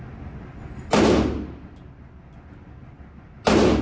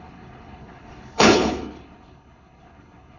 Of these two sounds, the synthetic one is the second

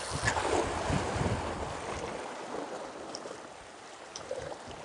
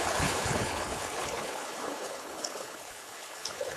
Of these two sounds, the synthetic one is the second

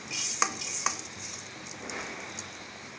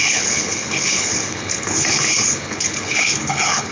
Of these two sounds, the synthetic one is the second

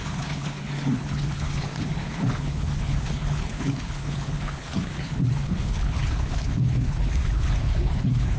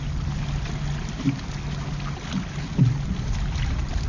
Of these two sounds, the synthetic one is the first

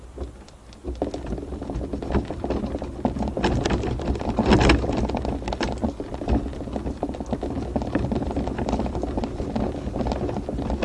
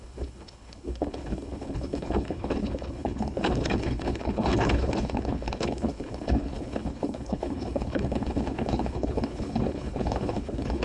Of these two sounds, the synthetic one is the second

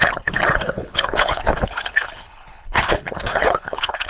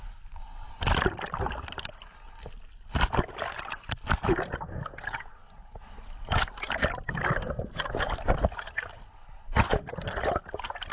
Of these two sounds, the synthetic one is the first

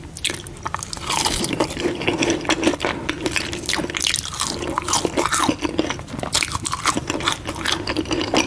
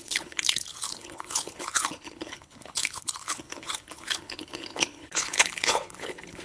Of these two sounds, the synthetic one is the second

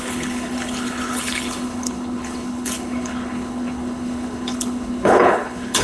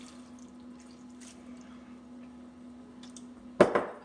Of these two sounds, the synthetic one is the first